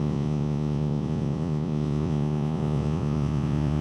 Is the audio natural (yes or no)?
no